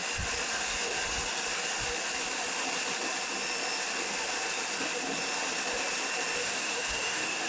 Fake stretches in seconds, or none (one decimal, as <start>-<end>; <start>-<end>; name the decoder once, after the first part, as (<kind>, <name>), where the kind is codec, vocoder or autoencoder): 6.4-7.5 (autoencoder, DAC-VAE)